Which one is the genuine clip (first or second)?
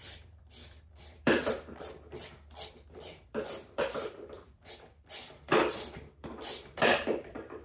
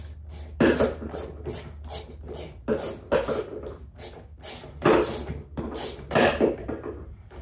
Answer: second